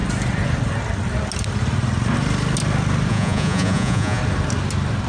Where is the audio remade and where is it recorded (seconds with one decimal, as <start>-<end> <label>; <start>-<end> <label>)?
0.0-3.1 recorded; 3.1-4.2 remade; 4.2-5.1 recorded